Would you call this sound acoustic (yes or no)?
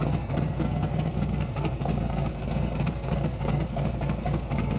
no